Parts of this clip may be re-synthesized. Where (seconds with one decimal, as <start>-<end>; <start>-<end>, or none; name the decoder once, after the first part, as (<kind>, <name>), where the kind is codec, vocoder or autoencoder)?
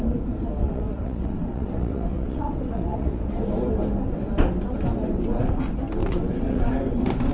0.6-3.4 (vocoder, WaveNeXt); 6.0-6.6